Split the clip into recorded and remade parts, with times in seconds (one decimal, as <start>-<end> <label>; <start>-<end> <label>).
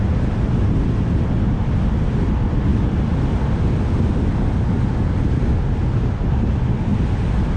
0.0-7.6 recorded